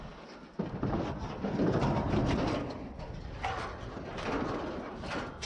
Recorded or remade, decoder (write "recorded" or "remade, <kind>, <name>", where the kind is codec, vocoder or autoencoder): recorded